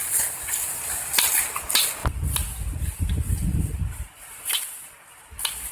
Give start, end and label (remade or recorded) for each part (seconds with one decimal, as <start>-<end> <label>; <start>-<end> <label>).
0.0-0.8 remade; 0.8-2.0 recorded; 2.0-5.7 remade